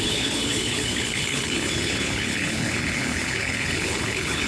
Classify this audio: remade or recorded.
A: remade